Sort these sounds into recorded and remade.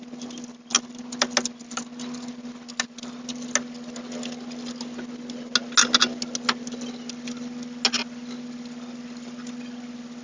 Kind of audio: recorded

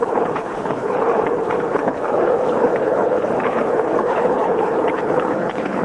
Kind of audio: remade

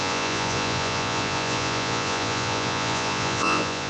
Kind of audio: remade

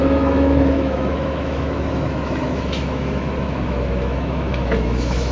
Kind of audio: remade